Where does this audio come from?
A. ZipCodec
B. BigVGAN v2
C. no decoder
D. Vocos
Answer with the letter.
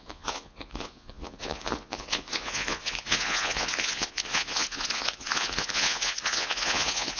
D